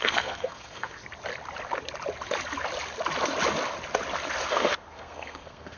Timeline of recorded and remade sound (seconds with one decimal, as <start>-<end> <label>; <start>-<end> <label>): 0.0-1.0 remade; 1.0-4.5 recorded; 4.5-5.8 remade

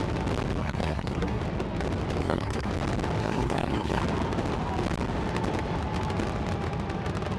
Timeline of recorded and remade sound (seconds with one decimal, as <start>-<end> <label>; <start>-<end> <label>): 0.0-0.6 recorded; 0.6-1.4 remade; 1.4-2.2 recorded; 2.2-2.7 remade; 2.7-3.2 recorded; 3.2-4.0 remade; 4.0-7.4 recorded

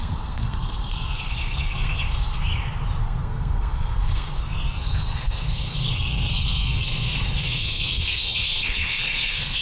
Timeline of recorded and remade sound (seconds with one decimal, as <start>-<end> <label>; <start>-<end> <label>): 0.0-2.5 remade; 2.5-3.0 recorded; 3.0-9.6 remade